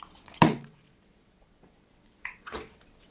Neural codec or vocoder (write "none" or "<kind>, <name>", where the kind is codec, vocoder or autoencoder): vocoder, WaveNeXt